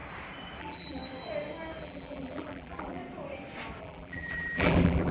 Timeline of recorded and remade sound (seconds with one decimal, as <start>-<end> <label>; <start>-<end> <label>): 0.0-0.6 recorded; 0.6-1.0 remade; 1.0-1.8 recorded; 1.8-3.0 remade; 3.0-3.8 recorded; 3.8-5.1 remade